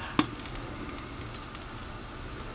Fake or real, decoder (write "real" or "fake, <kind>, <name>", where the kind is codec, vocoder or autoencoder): real